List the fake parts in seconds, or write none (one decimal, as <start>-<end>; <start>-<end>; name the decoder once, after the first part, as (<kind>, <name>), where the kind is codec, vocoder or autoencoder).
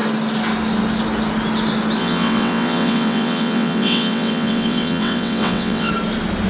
2.0-5.9 (vocoder, WaveNeXt)